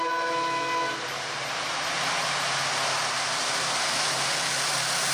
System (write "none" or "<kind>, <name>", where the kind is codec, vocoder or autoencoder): none